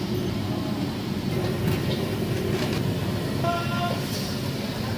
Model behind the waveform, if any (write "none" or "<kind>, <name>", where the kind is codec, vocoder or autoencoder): none